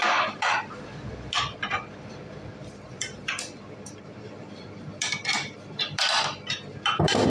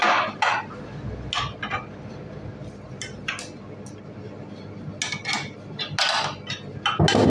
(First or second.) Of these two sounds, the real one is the second